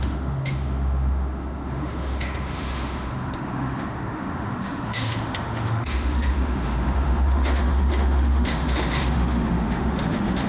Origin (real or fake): fake